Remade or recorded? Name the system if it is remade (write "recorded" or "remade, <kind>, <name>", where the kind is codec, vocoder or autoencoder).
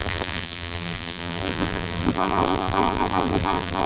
remade, vocoder, BigVGAN v2